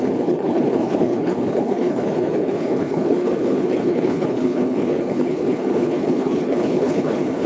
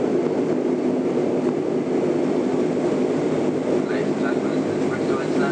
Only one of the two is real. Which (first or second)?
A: second